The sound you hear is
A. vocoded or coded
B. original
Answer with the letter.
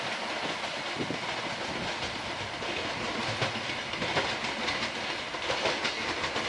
B